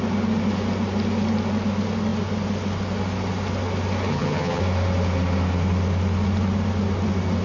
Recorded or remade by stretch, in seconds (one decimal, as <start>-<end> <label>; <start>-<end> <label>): 0.0-4.1 recorded; 4.1-4.6 remade; 4.6-7.4 recorded